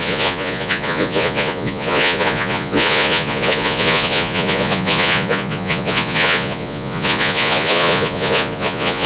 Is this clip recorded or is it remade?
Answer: remade